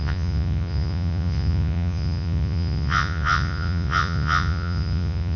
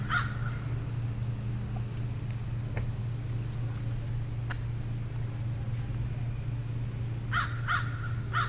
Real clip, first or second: second